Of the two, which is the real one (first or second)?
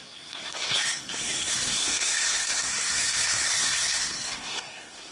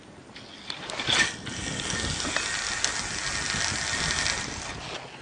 second